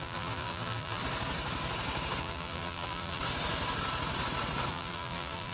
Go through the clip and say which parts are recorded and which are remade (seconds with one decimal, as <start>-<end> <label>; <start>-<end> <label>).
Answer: 0.0-1.0 remade; 1.0-2.2 recorded; 2.2-3.2 remade; 3.2-4.7 recorded; 4.7-5.5 remade